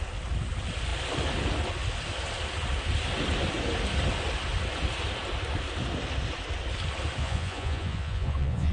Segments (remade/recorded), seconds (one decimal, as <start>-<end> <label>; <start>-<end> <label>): 0.0-7.2 recorded; 7.2-8.7 remade